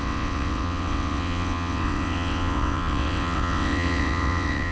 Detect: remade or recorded remade